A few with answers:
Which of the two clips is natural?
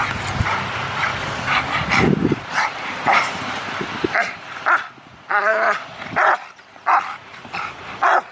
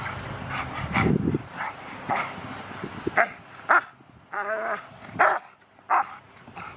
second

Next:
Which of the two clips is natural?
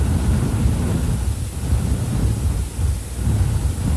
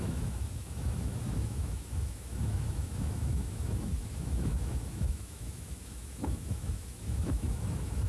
first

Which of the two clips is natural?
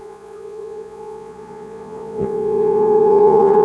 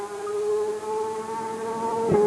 second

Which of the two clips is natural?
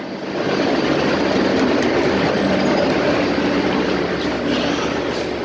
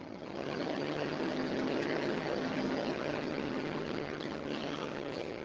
first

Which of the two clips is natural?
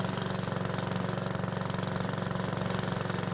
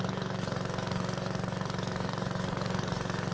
first